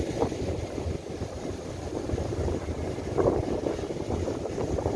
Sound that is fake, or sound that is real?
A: real